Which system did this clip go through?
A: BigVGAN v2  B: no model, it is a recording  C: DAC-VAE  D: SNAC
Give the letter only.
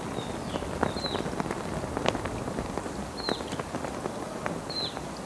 B